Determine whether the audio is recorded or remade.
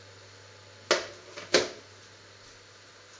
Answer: recorded